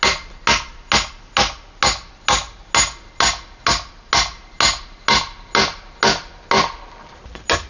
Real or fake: real